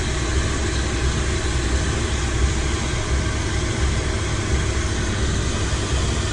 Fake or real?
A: real